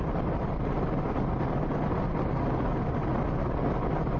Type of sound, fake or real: real